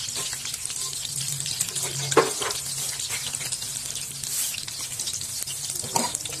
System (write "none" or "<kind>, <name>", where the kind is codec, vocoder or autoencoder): none